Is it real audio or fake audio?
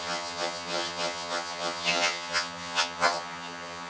fake